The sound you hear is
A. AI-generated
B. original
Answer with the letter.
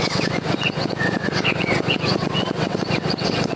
A